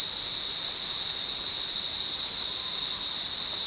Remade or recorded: recorded